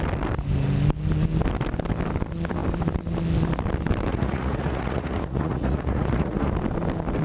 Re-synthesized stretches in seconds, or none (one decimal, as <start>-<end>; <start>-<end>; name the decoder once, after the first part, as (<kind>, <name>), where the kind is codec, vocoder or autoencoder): 4.1-6.5 (vocoder, Vocos)